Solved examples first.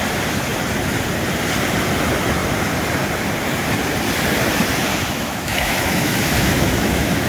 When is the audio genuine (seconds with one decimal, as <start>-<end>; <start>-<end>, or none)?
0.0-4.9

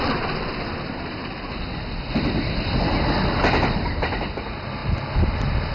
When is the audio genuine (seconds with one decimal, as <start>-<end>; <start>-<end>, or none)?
0.0-5.7

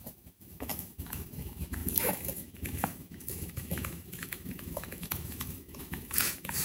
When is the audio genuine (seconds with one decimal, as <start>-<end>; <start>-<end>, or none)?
none

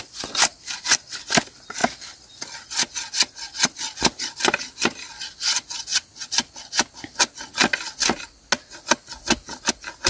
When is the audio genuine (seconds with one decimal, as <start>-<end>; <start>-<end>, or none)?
0.0-10.1

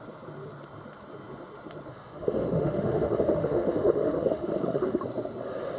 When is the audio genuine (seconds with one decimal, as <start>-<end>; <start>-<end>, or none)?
0.0-1.9; 5.0-5.8

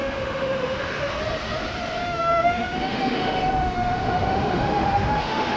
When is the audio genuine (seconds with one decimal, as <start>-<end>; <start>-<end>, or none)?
1.2-2.0